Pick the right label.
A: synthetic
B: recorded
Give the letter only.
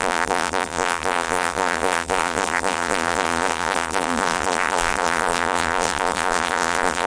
A